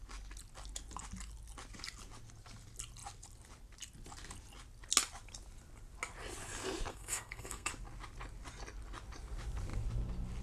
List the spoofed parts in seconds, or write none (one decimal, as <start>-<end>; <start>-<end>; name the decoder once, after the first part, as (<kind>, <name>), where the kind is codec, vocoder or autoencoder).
6.9-7.7 (codec, SNAC)

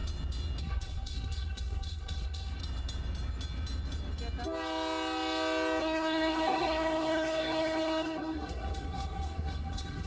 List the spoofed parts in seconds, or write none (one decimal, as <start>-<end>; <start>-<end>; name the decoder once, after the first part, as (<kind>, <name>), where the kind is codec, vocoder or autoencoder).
0.6-2.6 (codec, SNAC); 5.8-10.1

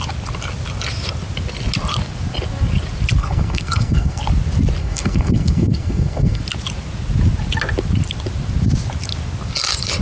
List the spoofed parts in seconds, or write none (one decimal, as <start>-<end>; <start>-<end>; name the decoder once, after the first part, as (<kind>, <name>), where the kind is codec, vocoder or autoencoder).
3.2-4.2 (codec, SNAC); 4.8-6.4

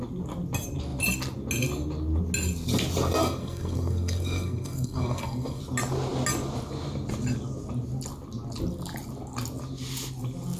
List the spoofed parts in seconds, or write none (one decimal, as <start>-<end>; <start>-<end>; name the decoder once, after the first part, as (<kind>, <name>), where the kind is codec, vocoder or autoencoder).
3.2-5.6 (codec, SNAC)

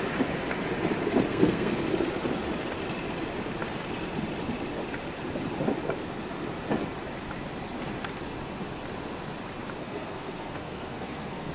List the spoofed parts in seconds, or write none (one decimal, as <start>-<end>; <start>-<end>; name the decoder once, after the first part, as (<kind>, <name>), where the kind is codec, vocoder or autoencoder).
1.3-1.9 (codec, SNAC); 9.8-11.5

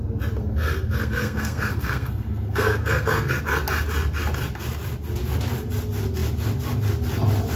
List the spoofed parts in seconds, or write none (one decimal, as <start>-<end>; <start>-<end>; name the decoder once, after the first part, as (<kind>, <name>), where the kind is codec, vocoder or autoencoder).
0.4-3.4 (codec, SNAC)

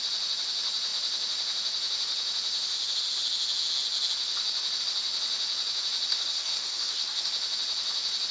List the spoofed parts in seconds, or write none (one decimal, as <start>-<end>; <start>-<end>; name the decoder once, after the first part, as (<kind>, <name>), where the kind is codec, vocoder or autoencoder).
6.1-7.3 (codec, SNAC)